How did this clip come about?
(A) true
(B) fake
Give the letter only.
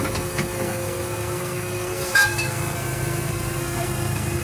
B